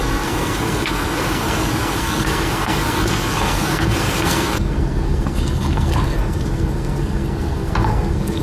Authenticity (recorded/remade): remade